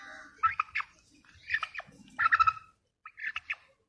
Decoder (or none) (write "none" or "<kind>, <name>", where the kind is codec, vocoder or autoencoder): none